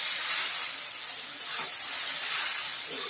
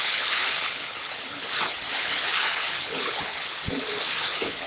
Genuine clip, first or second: first